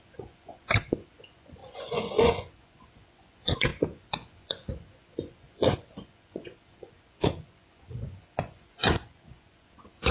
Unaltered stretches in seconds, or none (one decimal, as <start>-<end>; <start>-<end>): none